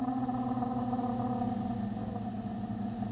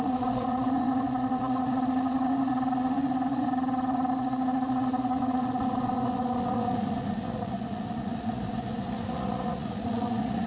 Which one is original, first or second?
first